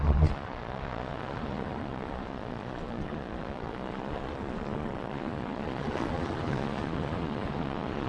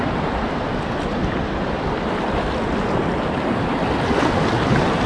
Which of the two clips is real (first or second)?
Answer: second